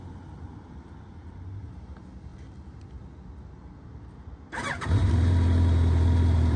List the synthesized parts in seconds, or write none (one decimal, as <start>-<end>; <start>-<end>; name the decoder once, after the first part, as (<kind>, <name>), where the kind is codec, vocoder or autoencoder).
none